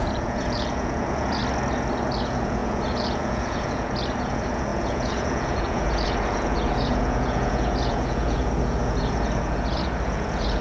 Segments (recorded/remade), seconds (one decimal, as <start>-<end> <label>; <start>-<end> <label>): 0.0-1.4 remade; 1.4-2.2 recorded; 2.2-10.6 remade